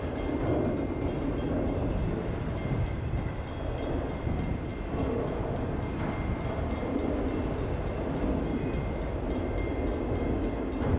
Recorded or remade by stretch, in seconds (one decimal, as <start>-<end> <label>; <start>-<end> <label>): 0.0-11.0 recorded